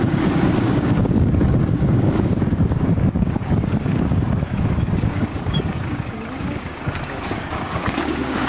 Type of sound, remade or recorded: remade